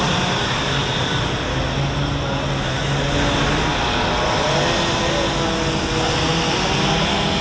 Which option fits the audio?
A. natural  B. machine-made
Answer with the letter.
A